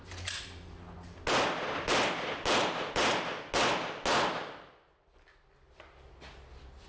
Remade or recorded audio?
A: recorded